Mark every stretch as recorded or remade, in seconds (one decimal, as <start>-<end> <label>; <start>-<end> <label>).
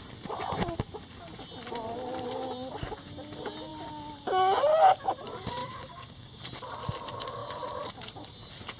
0.0-5.6 recorded; 5.6-6.4 remade; 6.4-8.8 recorded